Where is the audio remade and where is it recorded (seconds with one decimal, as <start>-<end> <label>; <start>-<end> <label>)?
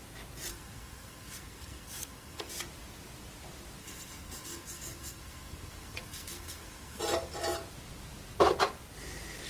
0.0-0.5 recorded; 0.5-2.5 remade; 2.5-3.8 recorded; 3.8-7.0 remade; 7.0-9.5 recorded